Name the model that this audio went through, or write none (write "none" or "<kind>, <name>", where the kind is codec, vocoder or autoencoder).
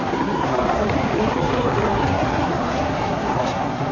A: codec, SNAC